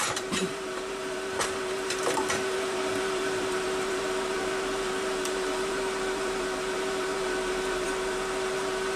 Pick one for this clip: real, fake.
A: fake